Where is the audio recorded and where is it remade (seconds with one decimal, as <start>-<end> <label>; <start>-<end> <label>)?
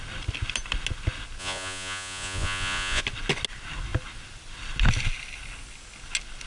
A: 0.0-1.4 recorded; 1.4-3.0 remade; 3.0-6.5 recorded